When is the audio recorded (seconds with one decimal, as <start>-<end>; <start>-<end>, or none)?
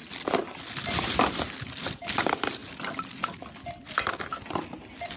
0.0-5.2